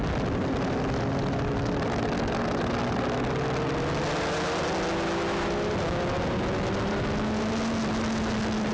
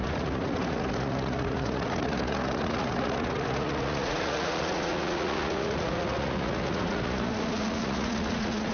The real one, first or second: first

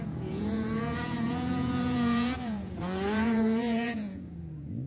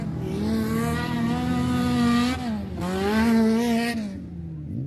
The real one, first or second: second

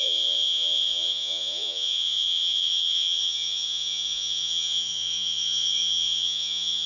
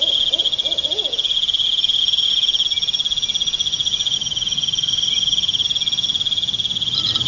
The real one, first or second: second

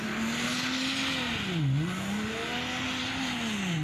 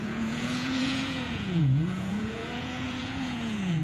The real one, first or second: first